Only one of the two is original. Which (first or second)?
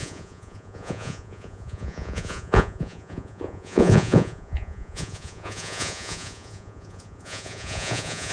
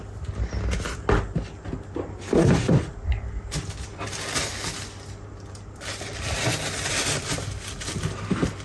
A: second